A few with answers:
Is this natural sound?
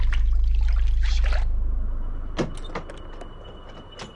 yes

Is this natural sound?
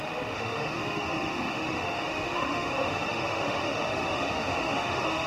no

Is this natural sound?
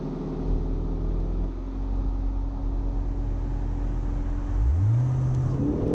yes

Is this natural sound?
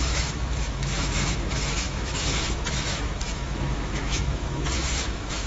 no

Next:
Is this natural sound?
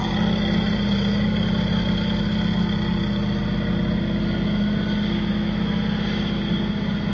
yes